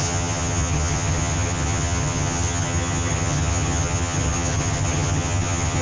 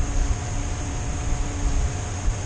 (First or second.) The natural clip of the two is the second